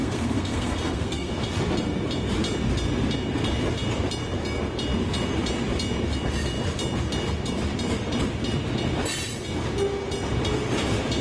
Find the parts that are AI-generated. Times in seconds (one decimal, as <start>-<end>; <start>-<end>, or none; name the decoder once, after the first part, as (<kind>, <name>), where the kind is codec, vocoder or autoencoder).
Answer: 0.0-1.3 (codec, SNAC)